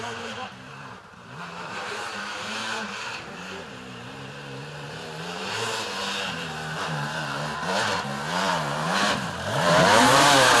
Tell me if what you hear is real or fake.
fake